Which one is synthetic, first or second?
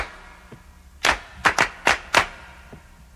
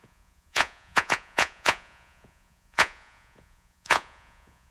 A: second